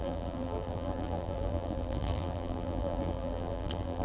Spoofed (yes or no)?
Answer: yes